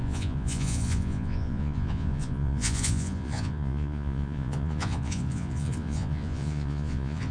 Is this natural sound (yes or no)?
no